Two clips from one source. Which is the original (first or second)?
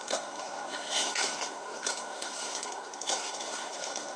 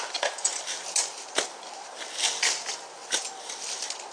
second